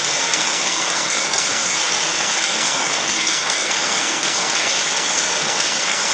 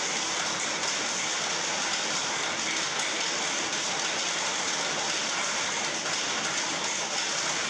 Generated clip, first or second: first